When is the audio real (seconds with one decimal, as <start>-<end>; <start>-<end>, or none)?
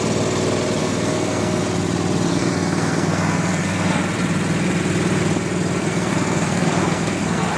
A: 0.0-0.8; 1.6-2.3; 4.0-5.8